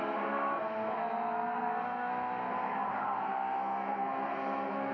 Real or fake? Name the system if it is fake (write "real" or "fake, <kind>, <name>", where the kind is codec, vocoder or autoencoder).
fake, codec, SNAC